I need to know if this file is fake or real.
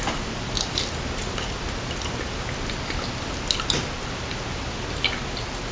real